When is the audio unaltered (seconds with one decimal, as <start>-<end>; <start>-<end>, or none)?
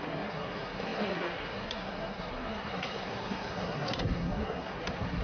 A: none